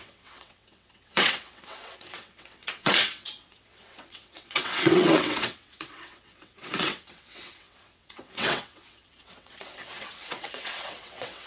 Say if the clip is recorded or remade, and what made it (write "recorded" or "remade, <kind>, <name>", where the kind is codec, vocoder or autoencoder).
remade, vocoder, WaveNeXt